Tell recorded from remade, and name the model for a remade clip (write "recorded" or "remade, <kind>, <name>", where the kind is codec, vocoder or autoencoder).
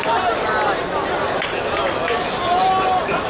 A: recorded